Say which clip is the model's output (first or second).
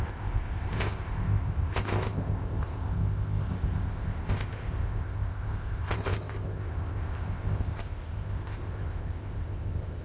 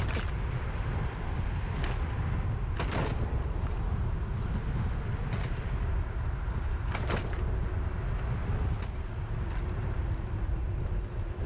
first